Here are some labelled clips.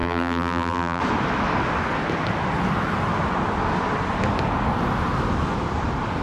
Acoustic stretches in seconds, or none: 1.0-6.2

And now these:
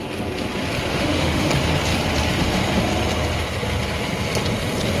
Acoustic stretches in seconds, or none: 0.0-0.9; 1.5-5.0

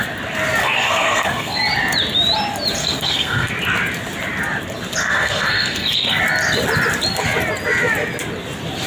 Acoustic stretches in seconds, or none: 0.0-0.6; 1.6-2.8; 3.5-5.0; 6.2-8.9